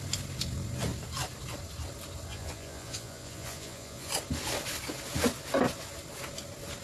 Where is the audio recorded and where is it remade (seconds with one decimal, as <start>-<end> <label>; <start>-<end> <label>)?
0.0-2.3 recorded; 2.3-4.1 remade; 4.1-6.8 recorded